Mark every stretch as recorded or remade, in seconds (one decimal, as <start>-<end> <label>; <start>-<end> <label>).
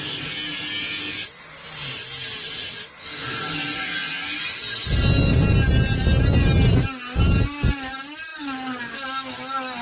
0.0-9.8 recorded